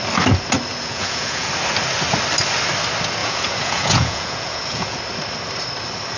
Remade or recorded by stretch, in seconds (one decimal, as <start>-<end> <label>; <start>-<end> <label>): 0.0-0.7 recorded; 0.7-1.5 remade; 1.5-3.2 recorded; 3.2-5.0 remade; 5.0-6.2 recorded